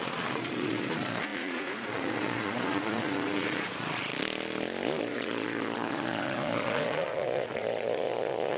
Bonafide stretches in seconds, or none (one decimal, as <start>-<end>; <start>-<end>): 4.1-5.0